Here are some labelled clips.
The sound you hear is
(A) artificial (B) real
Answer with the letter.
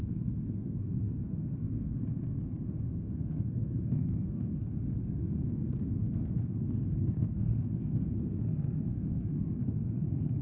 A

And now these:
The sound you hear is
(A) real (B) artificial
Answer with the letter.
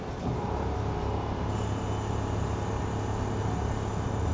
A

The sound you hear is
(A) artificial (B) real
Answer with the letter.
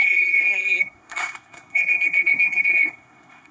A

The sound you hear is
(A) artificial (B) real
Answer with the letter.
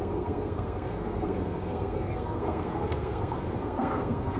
A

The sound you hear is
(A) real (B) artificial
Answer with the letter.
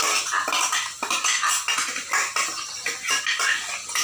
A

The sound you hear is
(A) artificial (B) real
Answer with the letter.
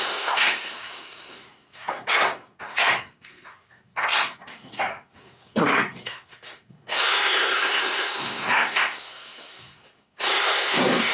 A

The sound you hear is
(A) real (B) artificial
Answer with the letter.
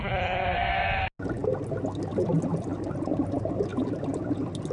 A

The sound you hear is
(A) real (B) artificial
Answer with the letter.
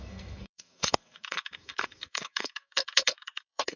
B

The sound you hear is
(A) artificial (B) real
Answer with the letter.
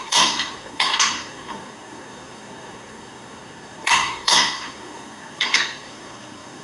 A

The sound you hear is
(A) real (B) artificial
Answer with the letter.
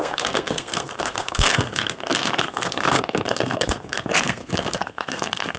B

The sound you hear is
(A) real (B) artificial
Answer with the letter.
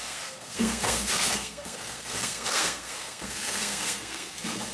B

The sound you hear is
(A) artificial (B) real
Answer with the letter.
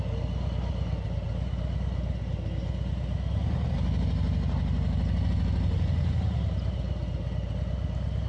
B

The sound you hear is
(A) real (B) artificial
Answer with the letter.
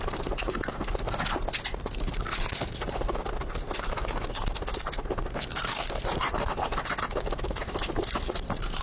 A